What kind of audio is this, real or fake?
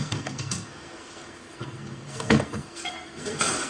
fake